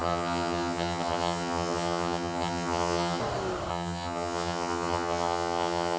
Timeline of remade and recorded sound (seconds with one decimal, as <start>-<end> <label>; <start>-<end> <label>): 0.0-3.2 remade; 3.2-3.7 recorded; 3.7-6.0 remade